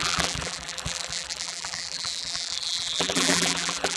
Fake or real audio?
fake